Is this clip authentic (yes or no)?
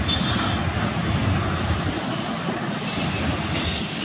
yes